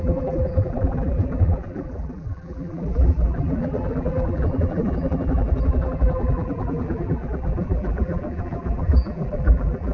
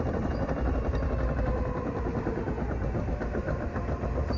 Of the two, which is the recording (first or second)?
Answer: second